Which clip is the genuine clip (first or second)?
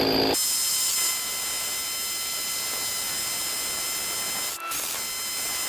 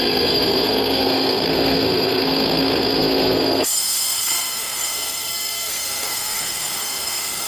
first